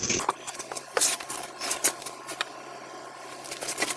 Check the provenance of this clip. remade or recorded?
recorded